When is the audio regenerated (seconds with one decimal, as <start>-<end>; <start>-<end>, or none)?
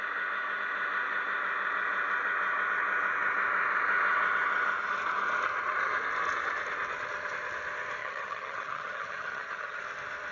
8.0-9.8